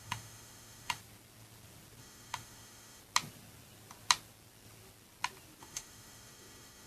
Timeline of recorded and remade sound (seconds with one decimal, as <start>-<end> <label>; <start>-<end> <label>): 0.0-1.0 remade; 1.0-2.0 recorded; 2.0-3.0 remade; 3.0-5.6 recorded; 5.6-6.9 remade